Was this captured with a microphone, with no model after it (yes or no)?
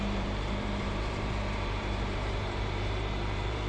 no